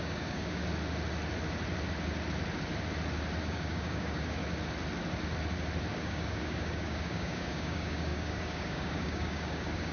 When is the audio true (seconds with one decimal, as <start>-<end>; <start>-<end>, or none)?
0.6-3.4; 4.4-5.9